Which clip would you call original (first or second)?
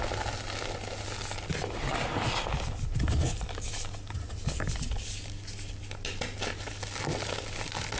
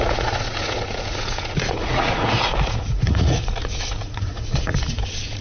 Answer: first